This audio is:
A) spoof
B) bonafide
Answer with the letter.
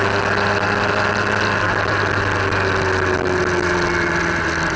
B